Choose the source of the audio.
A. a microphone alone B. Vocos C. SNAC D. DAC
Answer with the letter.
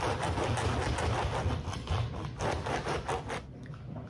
A